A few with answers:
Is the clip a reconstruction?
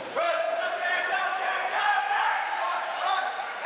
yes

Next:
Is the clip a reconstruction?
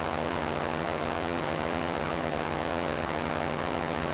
yes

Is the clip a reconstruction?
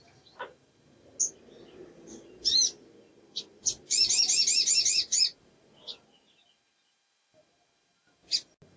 no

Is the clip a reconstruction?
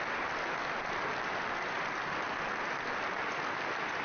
no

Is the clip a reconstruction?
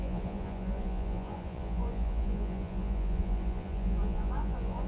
yes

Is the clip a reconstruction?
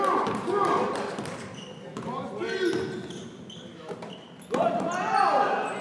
no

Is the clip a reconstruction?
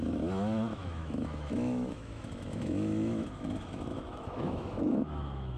yes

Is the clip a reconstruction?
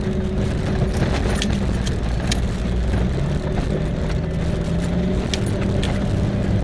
no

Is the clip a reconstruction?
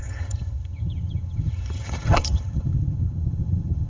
yes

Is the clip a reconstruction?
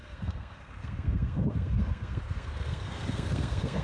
yes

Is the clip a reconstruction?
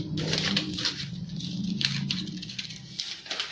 no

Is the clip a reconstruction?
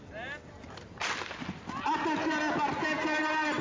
no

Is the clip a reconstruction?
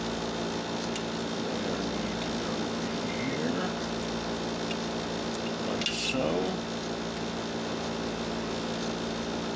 no